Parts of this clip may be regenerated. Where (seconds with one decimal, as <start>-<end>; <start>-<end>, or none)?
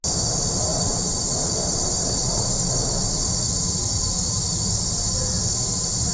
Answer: 0.7-1.9